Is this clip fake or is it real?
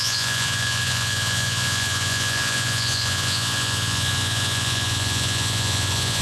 fake